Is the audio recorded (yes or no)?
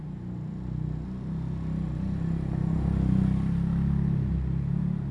yes